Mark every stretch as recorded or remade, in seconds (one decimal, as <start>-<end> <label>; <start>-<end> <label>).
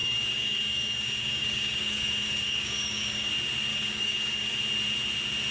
0.0-3.3 remade; 3.3-3.7 recorded; 3.7-4.6 remade; 4.6-5.5 recorded